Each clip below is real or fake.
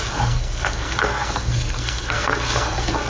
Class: fake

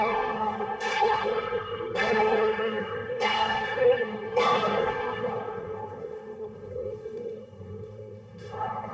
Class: fake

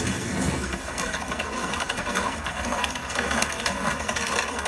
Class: fake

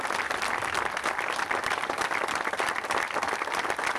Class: real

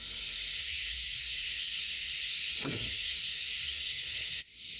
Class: fake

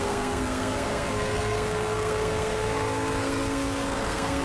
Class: fake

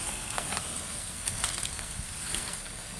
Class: fake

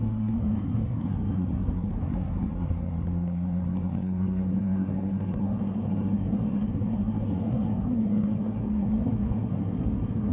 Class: fake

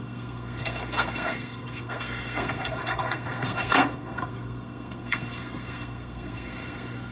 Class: fake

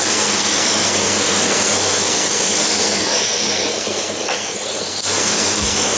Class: fake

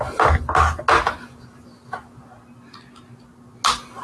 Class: real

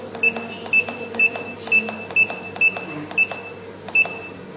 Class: real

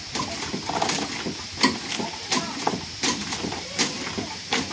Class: real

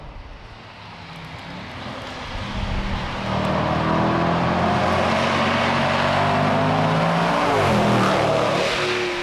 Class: real